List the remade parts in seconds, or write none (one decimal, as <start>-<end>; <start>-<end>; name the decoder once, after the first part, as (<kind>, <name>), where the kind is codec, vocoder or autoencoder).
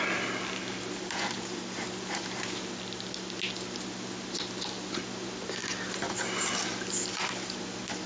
none